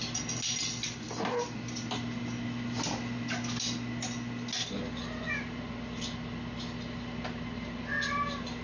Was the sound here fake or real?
real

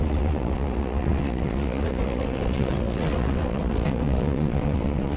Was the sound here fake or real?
fake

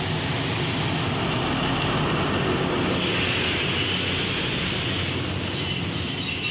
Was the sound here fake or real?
real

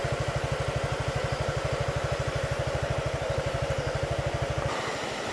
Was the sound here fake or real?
real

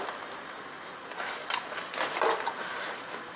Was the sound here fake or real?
real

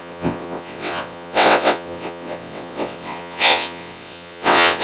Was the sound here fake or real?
fake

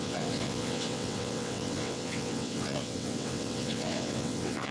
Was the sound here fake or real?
fake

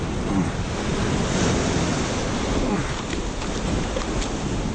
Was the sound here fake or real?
real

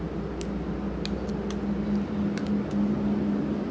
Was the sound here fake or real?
real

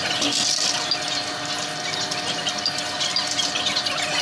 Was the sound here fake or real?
real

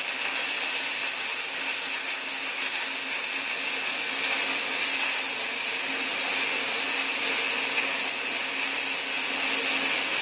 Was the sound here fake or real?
real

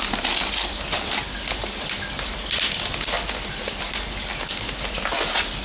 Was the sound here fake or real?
real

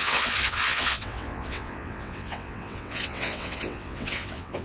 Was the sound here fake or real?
fake